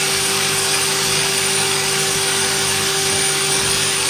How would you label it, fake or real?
fake